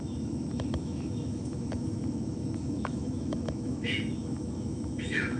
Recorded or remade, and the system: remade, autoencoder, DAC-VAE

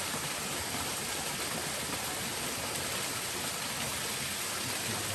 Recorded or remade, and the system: recorded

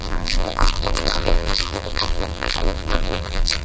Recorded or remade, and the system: remade, vocoder, BigVGAN v2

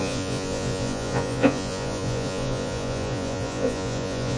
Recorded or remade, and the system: remade, vocoder, Vocos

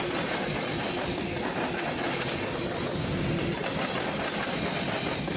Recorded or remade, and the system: recorded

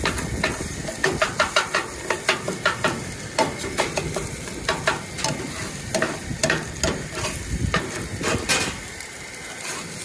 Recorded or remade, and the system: recorded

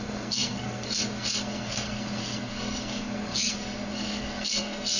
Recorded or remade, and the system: remade, codec, SNAC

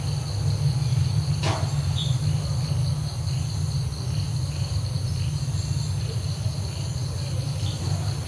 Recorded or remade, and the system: recorded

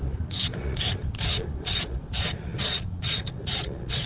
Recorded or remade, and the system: remade, vocoder, Vocos